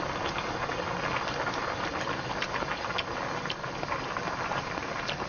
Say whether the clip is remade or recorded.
recorded